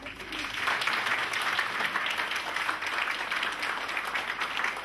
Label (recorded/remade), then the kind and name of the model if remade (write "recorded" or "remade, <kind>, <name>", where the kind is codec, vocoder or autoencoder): recorded